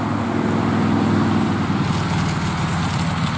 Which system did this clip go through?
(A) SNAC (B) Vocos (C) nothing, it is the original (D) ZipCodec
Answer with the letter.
C